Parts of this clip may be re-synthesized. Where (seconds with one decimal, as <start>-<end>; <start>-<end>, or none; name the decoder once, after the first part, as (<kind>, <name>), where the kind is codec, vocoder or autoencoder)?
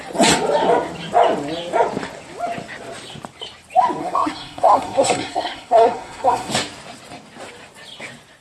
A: 4.0-6.5 (codec, SNAC)